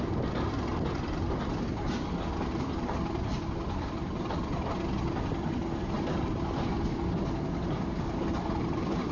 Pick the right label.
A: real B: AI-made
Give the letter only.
A